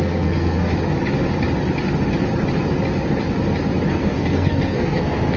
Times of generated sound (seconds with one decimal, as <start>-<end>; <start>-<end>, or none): 0.0-0.7; 3.9-5.4